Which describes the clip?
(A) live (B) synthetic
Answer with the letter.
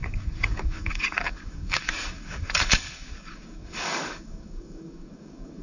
B